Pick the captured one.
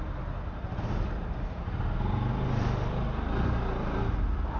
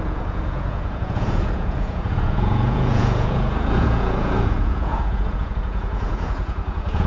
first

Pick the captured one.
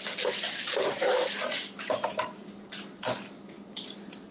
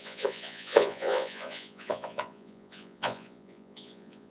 first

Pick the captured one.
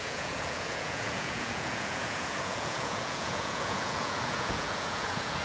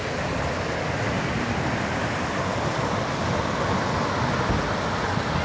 second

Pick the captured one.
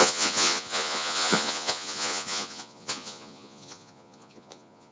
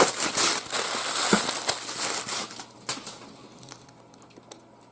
second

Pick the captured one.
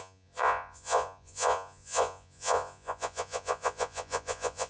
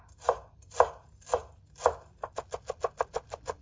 second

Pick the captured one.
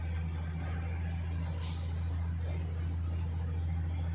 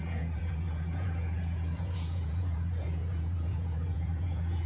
first